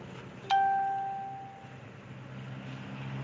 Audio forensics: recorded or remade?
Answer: recorded